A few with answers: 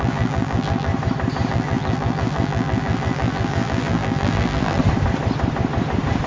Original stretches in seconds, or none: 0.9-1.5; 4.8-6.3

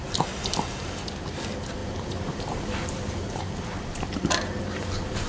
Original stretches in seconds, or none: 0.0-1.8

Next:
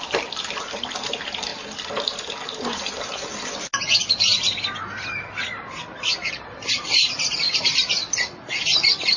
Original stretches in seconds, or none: 1.5-6.3

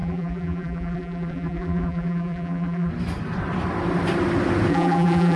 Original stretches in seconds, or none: 2.9-4.7